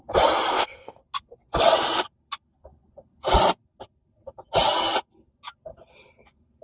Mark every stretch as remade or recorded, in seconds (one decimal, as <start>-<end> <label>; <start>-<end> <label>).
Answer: 0.0-0.5 recorded; 0.5-1.0 remade; 1.0-6.6 recorded